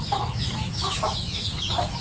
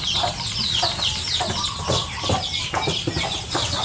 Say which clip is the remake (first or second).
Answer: first